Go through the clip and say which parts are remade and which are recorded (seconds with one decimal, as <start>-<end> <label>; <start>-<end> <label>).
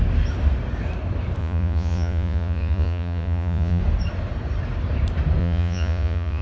0.0-1.4 recorded; 1.4-3.8 remade; 3.8-5.4 recorded; 5.4-6.4 remade